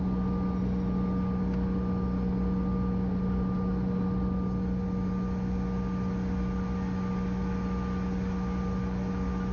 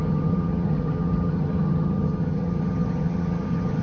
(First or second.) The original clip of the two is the first